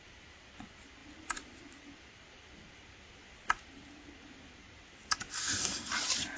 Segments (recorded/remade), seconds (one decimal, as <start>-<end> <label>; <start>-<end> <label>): 0.0-5.4 recorded; 5.4-5.9 remade; 5.9-6.4 recorded